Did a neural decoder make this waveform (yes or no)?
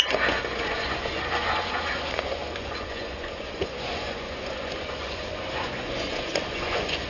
yes